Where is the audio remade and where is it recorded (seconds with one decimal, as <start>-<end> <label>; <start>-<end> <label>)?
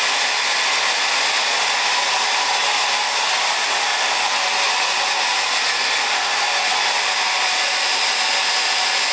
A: 0.0-9.1 recorded